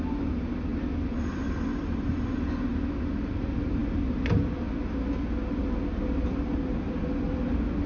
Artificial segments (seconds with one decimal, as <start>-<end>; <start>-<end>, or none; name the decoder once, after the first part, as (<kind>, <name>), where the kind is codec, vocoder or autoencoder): 0.7-2.2 (vocoder, BigVGAN v2)